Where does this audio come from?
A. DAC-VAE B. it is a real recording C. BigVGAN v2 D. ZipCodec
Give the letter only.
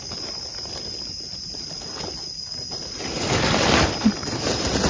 B